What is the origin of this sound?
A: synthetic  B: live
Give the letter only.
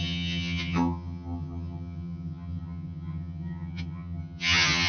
A